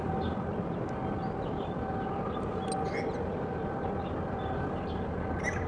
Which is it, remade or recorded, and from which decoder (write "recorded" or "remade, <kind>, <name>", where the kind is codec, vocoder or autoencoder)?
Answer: recorded